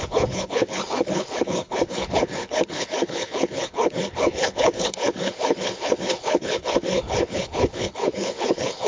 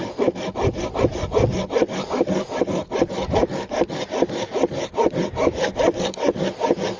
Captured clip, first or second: second